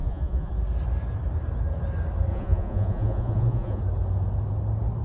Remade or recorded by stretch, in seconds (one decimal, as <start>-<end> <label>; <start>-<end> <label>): 0.0-0.5 remade; 0.5-2.3 recorded; 2.3-3.8 remade; 3.8-5.0 recorded